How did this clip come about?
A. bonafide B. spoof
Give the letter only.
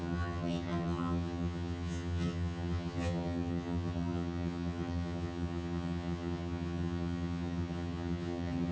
B